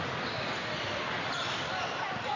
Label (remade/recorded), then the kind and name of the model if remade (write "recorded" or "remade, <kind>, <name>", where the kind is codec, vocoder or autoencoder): recorded